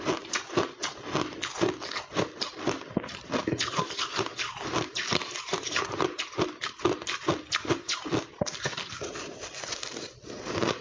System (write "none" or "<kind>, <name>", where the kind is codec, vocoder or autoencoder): vocoder, BigVGAN v2